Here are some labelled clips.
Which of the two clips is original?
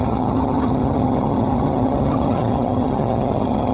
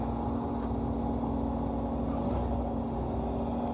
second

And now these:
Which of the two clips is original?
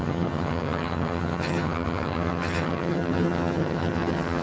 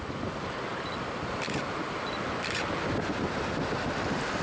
second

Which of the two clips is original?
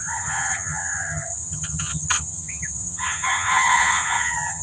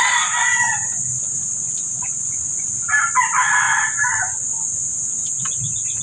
second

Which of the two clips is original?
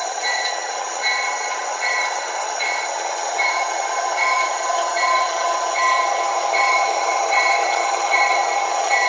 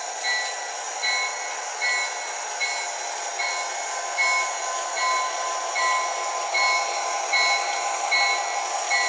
second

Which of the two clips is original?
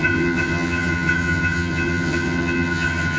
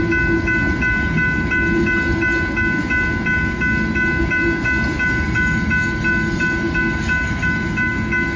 second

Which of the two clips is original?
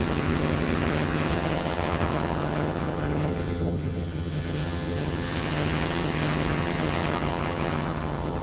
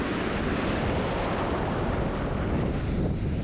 second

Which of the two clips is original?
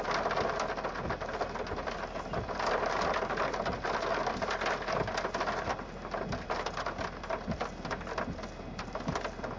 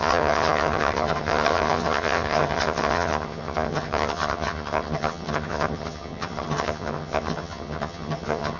first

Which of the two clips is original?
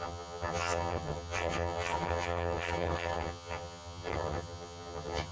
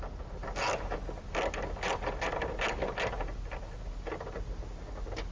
second